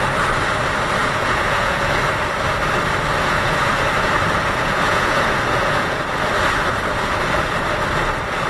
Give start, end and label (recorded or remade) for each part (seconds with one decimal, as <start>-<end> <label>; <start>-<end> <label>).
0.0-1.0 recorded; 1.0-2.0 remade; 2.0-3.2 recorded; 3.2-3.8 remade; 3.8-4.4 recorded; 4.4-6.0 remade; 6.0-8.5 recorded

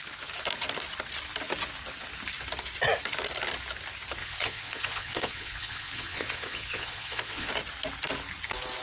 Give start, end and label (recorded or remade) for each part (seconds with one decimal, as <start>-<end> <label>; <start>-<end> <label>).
0.0-4.2 recorded; 4.2-7.5 remade; 7.5-8.8 recorded

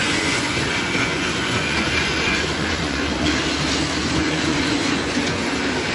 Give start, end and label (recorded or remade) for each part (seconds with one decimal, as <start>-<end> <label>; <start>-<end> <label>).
0.0-3.3 remade; 3.3-4.0 recorded; 4.0-5.5 remade; 5.5-5.9 recorded

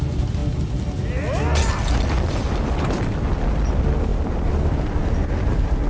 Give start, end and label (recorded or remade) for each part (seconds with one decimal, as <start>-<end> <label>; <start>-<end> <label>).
0.0-5.9 recorded

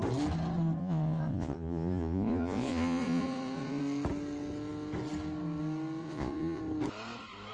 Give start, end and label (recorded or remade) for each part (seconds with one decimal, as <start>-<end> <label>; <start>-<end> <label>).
0.0-0.8 recorded; 0.8-3.8 remade; 3.8-6.0 recorded; 6.0-6.6 remade; 6.6-7.5 recorded

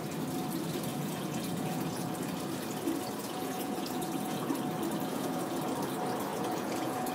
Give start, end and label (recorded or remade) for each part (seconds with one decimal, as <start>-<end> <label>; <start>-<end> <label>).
0.0-0.9 recorded; 0.9-2.1 remade; 2.1-3.2 recorded; 3.2-4.5 remade; 4.5-5.1 recorded; 5.1-5.6 remade; 5.6-6.3 recorded; 6.3-7.1 remade

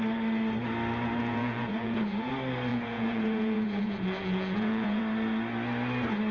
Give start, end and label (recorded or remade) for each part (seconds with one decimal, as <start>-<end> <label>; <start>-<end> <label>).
0.0-1.2 recorded; 1.2-2.3 remade; 2.3-2.7 recorded; 2.7-5.0 remade; 5.0-6.3 recorded